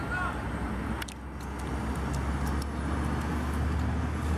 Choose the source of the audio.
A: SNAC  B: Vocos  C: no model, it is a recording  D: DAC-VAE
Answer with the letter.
C